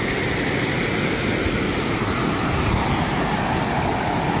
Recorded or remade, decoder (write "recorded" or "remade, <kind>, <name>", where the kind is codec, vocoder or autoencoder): recorded